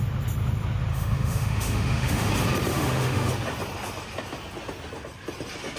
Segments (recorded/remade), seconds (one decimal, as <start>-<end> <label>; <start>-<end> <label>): 0.0-0.9 recorded; 0.9-2.3 remade; 2.3-2.7 recorded; 2.7-3.3 remade; 3.3-5.8 recorded

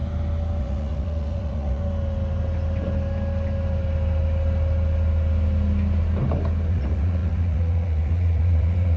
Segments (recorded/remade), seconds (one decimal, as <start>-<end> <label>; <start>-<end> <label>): 0.0-0.6 recorded; 0.6-1.8 remade; 1.8-6.7 recorded; 6.7-9.0 remade

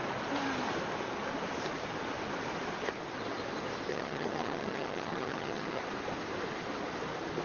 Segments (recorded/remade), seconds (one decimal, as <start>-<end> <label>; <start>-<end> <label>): 0.0-3.9 recorded; 3.9-5.8 remade; 5.8-7.4 recorded

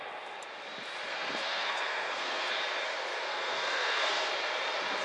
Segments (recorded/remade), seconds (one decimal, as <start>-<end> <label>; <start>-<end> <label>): 0.0-1.1 recorded; 1.1-2.5 remade; 2.5-3.1 recorded; 3.1-4.3 remade; 4.3-5.0 recorded

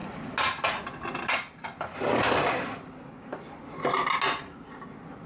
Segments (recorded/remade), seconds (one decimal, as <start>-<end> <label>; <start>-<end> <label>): 0.0-5.3 recorded

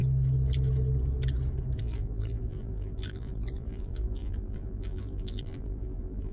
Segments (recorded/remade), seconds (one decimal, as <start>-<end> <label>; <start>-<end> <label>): 0.0-1.8 recorded; 1.8-6.3 remade

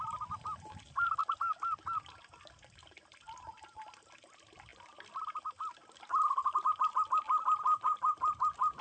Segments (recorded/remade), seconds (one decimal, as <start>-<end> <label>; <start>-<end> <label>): 0.0-1.2 recorded; 1.2-3.3 remade; 3.3-4.7 recorded; 4.7-5.2 remade; 5.2-7.7 recorded; 7.7-8.4 remade; 8.4-8.8 recorded